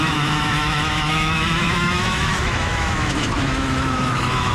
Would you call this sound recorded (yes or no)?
no